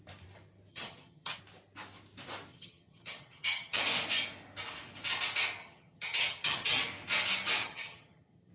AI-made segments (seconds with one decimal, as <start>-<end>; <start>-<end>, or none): 0.7-1.4; 2.5-3.8; 5.6-6.8; 7.6-8.5